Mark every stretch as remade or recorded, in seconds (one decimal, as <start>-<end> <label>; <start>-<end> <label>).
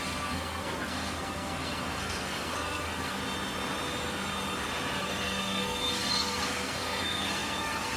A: 0.0-3.2 remade; 3.2-5.0 recorded; 5.0-8.0 remade